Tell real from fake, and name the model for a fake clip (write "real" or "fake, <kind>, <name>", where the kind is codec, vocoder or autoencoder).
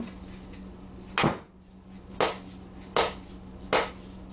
real